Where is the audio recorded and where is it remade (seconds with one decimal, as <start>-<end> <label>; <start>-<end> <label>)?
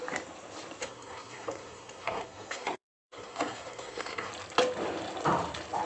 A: 0.0-0.8 recorded; 0.8-4.3 remade; 4.3-5.9 recorded